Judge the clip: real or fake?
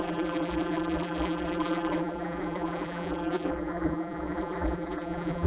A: fake